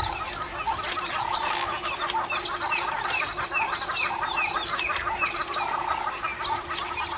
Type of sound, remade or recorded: recorded